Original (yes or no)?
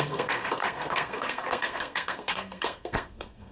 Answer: no